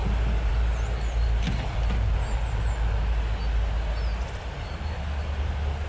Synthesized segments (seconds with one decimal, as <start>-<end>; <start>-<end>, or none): none